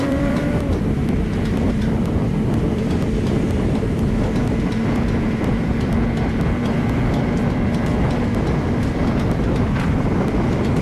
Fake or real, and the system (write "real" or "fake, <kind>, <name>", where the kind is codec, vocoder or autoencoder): fake, vocoder, BigVGAN v2